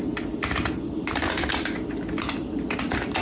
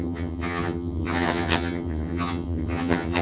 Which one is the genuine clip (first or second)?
first